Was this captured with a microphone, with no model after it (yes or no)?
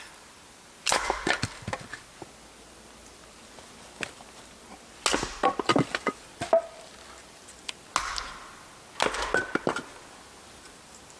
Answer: yes